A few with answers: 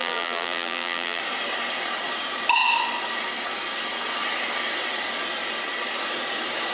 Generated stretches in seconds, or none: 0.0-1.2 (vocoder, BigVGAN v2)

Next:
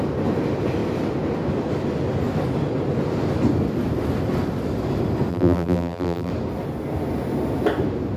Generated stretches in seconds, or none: 5.3-6.3 (vocoder, BigVGAN v2)

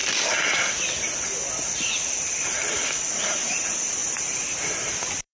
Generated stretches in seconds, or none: 3.2-5.3 (vocoder, BigVGAN v2)

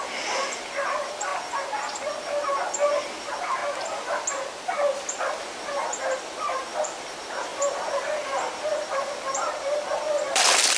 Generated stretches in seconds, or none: 0.0-1.3 (vocoder, BigVGAN v2); 3.0-3.6; 5.2-10.8